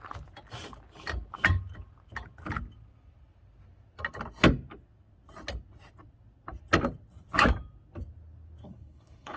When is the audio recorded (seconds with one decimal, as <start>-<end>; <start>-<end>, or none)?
0.0-8.6